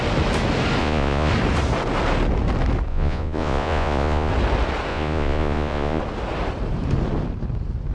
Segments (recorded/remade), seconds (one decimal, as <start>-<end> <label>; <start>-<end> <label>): 0.0-0.8 recorded; 0.8-1.3 remade; 1.3-2.9 recorded; 2.9-4.3 remade; 4.3-4.9 recorded; 4.9-6.0 remade; 6.0-7.9 recorded